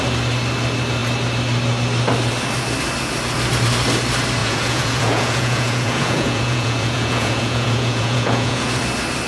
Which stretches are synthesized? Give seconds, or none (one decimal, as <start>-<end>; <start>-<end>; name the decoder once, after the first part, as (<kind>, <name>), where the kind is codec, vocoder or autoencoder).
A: 4.4-8.8 (vocoder, Vocos)